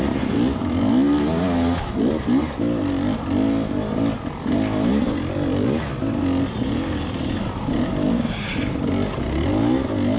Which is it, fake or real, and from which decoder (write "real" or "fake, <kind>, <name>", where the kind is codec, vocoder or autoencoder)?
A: real